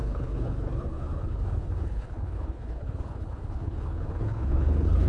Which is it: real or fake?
fake